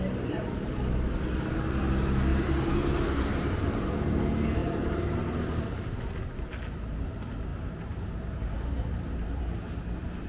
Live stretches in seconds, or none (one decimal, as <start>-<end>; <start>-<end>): 0.0-2.3; 3.9-4.6; 6.6-7.5; 9.4-10.3